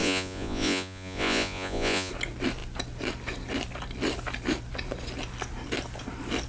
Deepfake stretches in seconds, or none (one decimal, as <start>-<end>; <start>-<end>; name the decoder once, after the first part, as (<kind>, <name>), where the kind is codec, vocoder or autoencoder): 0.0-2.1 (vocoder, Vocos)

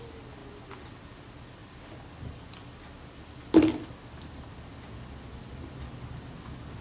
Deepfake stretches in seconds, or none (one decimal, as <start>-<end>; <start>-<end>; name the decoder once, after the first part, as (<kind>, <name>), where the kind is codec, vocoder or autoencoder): none

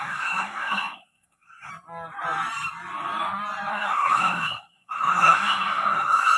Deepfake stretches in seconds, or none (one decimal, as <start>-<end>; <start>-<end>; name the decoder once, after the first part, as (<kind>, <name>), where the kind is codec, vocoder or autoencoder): 0.0-1.7 (codec, SNAC); 3.7-6.4

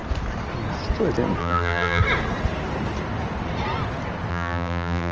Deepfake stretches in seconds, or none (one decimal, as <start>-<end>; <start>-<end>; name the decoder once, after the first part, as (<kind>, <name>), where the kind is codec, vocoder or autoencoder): 1.4-2.0 (vocoder, BigVGAN v2); 4.3-5.1

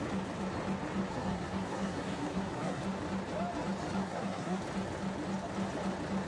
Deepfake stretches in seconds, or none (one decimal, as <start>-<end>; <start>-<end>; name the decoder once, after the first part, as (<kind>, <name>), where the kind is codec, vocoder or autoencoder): 1.1-2.8 (codec, SNAC); 4.0-4.6

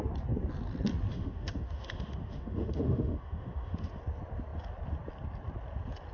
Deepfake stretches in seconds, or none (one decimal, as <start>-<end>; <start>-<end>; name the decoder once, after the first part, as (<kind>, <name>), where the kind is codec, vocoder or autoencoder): 1.1-4.0 (autoencoder, DAC-VAE)

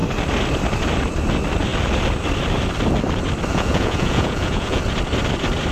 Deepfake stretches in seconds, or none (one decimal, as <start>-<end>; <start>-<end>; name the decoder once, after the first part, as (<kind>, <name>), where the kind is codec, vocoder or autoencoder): 3.5-4.8 (vocoder, Vocos)